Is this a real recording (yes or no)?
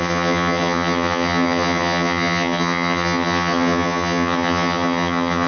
no